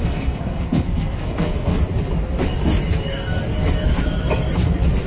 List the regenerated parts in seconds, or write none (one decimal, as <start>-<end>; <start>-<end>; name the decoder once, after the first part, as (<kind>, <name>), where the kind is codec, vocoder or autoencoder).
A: 0.0-1.7 (codec, SNAC)